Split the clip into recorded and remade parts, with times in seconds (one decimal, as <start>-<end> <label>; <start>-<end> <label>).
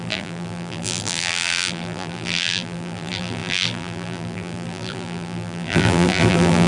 0.0-6.7 remade